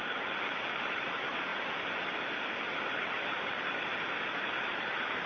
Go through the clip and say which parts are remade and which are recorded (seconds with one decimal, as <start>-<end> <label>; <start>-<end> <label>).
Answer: 0.0-5.3 recorded